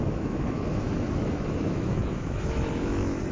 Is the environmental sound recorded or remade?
remade